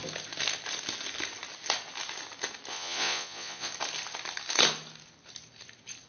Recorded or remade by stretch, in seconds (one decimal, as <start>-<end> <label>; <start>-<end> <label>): 0.0-2.7 recorded; 2.7-3.7 remade; 3.7-6.1 recorded